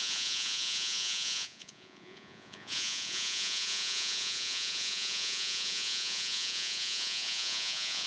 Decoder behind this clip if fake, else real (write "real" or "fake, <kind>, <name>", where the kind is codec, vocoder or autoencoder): fake, vocoder, Vocos